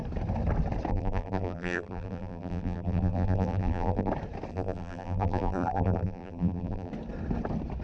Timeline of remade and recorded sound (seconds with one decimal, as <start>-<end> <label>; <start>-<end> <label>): 0.0-0.9 recorded; 0.9-4.1 remade; 4.1-4.5 recorded; 4.5-6.9 remade; 6.9-7.8 recorded